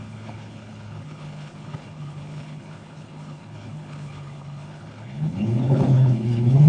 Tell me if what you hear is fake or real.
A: fake